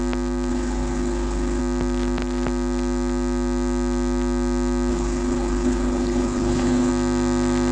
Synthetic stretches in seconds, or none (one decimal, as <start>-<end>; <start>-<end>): 0.5-1.6; 4.9-6.9